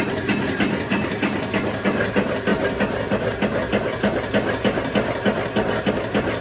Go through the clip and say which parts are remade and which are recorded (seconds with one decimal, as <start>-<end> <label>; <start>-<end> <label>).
0.0-6.4 recorded